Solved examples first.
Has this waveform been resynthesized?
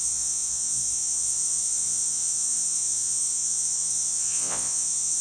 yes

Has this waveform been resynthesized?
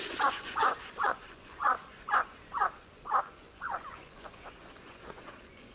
yes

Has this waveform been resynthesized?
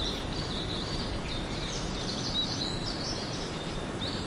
yes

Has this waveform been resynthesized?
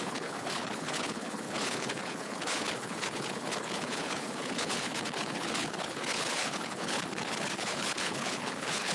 yes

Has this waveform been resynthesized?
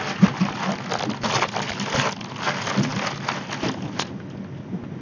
no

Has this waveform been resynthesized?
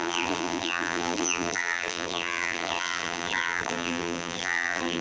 yes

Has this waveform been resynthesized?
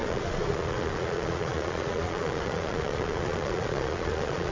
yes